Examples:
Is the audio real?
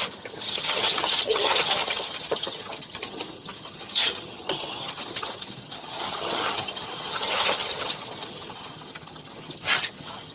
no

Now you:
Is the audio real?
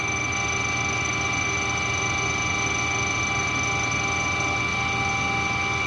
yes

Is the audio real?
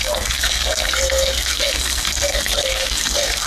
no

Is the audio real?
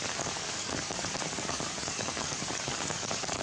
no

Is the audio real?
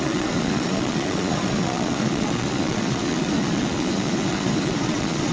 no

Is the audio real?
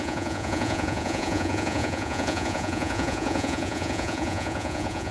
no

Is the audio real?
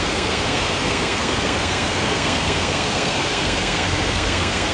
no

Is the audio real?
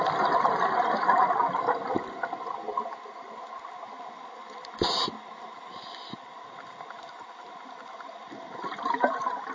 yes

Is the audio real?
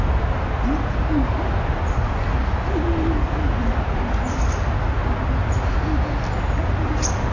yes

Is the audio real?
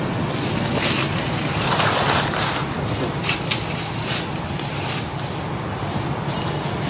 yes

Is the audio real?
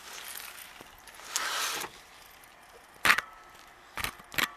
yes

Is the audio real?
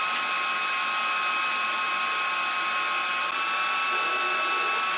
yes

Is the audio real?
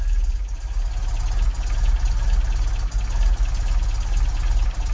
yes